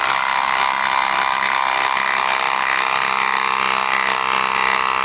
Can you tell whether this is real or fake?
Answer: real